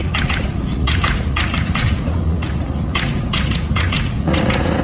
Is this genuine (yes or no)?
no